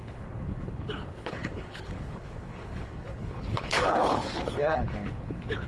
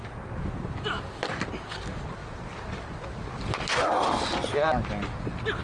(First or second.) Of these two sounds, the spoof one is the first